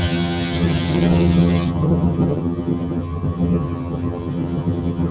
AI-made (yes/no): yes